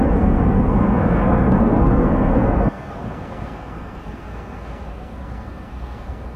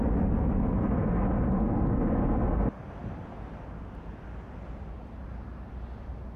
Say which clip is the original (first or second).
second